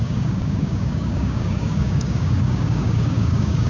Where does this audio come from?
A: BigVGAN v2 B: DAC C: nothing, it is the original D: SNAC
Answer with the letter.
B